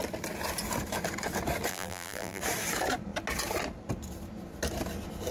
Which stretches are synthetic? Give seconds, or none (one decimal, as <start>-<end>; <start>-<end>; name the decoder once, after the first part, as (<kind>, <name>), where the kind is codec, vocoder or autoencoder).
1.7-2.4 (vocoder, BigVGAN v2)